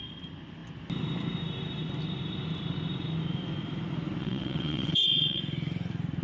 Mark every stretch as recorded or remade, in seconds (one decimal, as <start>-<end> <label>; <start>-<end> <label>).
0.0-4.2 recorded; 4.2-5.4 remade; 5.4-6.2 recorded